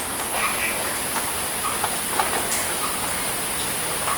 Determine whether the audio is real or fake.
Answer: real